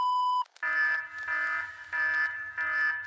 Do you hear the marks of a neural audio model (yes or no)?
no